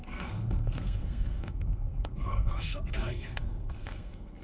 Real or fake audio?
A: fake